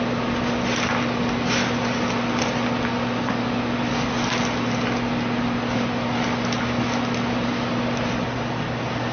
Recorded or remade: recorded